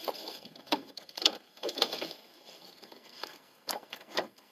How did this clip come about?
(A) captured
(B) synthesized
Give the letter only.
B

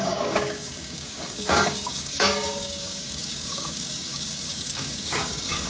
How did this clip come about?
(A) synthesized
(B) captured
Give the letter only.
A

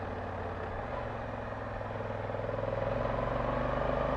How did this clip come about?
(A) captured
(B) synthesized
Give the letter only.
A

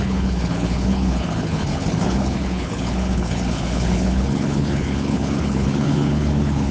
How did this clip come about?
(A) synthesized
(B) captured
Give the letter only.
A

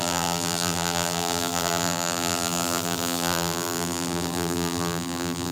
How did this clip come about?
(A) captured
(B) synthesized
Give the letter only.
B